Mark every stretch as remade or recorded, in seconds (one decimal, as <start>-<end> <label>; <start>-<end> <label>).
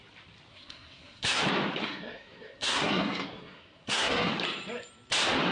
0.0-0.5 recorded; 0.5-1.4 remade; 1.4-1.8 recorded; 1.8-4.3 remade; 4.3-5.5 recorded